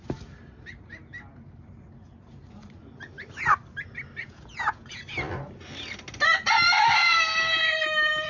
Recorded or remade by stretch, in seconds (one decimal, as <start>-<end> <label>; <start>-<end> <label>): 0.0-4.2 recorded; 4.2-5.0 remade; 5.0-8.3 recorded